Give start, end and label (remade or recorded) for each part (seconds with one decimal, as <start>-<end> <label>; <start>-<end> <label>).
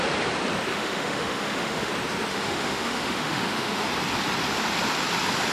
0.0-0.7 recorded; 0.7-1.9 remade; 1.9-2.3 recorded; 2.3-3.9 remade; 3.9-5.5 recorded